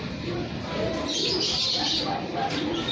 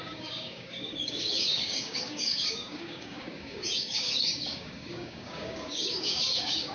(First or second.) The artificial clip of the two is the second